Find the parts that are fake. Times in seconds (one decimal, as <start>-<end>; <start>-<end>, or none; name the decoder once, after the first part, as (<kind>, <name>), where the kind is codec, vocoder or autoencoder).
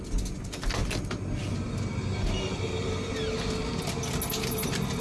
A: none